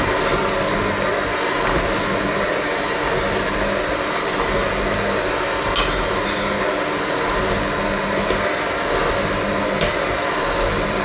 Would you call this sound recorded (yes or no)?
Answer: yes